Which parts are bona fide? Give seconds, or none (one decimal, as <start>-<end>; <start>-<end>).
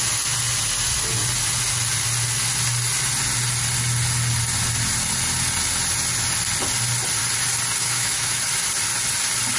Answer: 0.0-7.8; 8.4-9.6